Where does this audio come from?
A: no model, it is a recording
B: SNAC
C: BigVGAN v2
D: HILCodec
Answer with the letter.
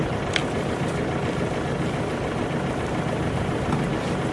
A